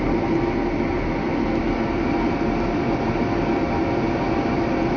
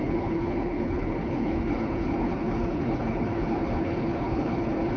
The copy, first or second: second